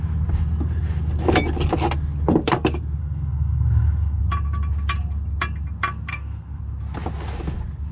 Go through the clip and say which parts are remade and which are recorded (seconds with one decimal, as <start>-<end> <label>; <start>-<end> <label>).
0.0-3.0 recorded; 3.0-4.2 remade; 4.2-6.1 recorded; 6.1-6.6 remade; 6.6-7.9 recorded